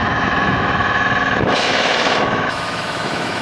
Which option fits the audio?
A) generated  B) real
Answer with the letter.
A